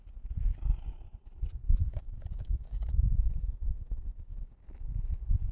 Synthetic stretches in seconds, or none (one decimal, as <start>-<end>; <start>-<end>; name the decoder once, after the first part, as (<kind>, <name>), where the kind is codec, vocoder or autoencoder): 1.6-4.9 (codec, DAC)